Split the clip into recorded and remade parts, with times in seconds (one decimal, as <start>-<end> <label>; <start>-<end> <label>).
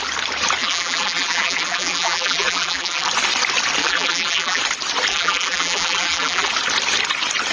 0.0-0.6 recorded; 0.6-3.1 remade; 3.1-3.8 recorded; 3.8-4.6 remade; 4.6-5.1 recorded; 5.1-6.5 remade; 6.5-7.5 recorded